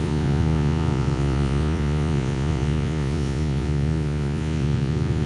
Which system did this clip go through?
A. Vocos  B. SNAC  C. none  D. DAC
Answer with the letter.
A